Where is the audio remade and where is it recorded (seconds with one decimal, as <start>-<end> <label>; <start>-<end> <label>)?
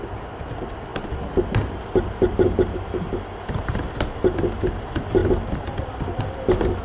0.0-6.8 recorded